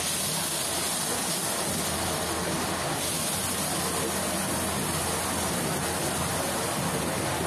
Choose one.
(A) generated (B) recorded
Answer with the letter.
B